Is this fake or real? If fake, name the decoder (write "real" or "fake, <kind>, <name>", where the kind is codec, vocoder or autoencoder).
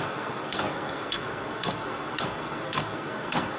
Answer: fake, codec, SNAC